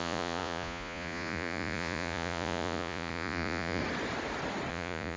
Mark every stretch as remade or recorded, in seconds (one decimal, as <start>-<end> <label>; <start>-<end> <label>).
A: 0.0-3.8 remade; 3.8-4.7 recorded; 4.7-5.2 remade